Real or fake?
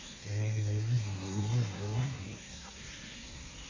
fake